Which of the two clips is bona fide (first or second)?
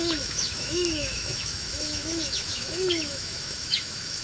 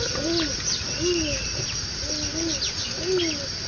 second